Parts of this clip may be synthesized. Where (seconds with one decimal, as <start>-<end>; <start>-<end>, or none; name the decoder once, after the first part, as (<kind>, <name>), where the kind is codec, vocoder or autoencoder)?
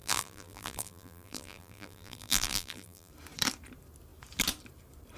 0.0-3.1 (vocoder, BigVGAN v2)